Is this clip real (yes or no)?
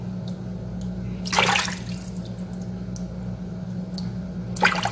yes